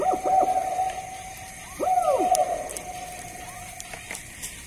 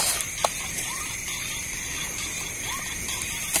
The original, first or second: first